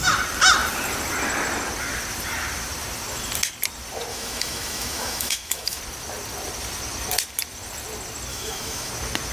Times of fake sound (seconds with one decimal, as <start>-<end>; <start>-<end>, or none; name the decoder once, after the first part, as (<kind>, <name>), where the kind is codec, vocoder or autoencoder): 4.1-5.8 (autoencoder, DAC-VAE); 8.3-8.9